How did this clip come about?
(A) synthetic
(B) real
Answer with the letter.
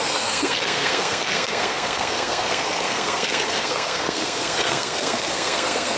A